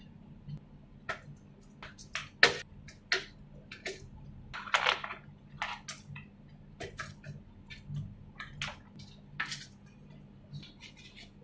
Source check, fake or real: real